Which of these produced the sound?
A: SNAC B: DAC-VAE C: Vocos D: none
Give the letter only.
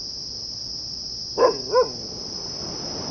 D